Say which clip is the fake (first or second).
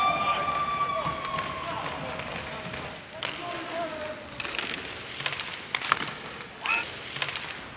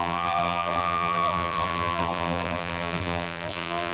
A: second